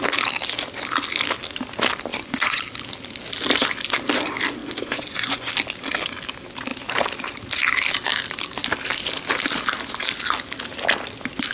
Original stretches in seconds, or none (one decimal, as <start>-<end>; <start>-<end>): 0.0-2.1; 2.6-4.6; 5.5-11.5